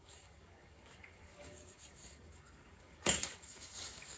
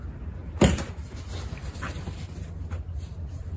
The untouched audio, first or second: second